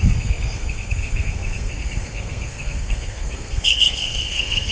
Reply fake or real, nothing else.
fake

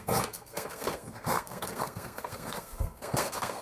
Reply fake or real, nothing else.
fake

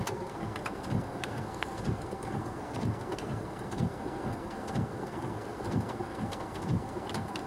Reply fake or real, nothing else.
fake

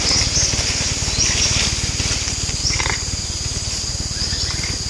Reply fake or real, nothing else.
real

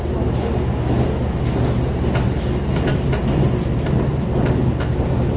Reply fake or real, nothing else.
real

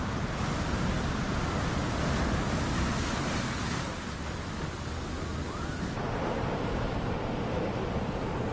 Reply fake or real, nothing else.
real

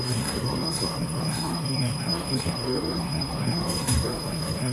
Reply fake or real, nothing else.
fake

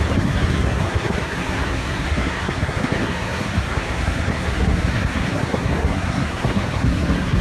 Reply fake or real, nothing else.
fake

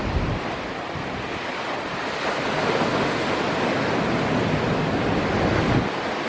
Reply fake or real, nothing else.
real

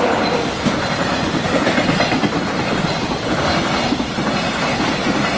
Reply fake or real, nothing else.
real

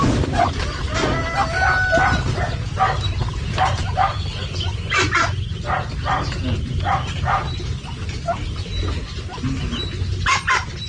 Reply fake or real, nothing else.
real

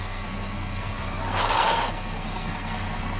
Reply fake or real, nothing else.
fake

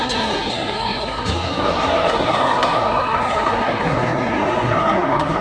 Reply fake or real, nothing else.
fake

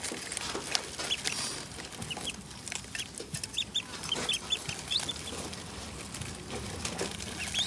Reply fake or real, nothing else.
real